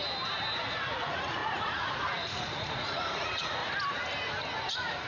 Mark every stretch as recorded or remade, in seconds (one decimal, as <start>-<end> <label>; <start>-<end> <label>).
0.0-0.9 recorded; 0.9-3.6 remade; 3.6-4.6 recorded; 4.6-5.1 remade